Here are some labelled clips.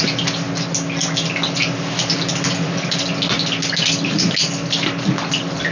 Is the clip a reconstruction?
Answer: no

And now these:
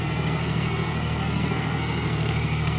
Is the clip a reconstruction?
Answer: yes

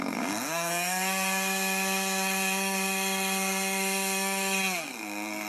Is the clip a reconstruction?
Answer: yes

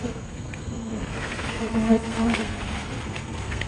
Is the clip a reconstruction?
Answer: yes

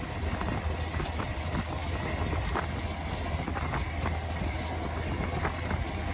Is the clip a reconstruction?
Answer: no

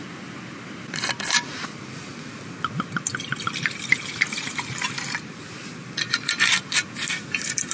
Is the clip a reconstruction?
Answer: no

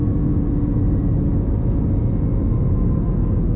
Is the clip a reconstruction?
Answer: no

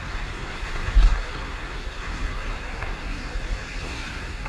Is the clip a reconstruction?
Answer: yes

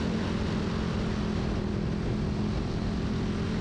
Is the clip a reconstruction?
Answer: no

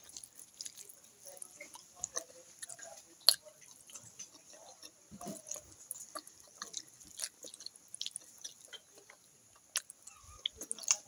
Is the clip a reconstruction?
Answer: no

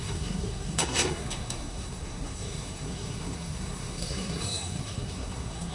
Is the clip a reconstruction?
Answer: yes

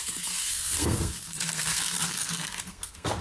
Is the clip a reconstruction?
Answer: yes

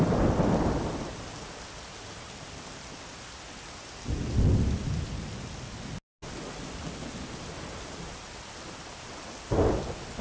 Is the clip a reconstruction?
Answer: no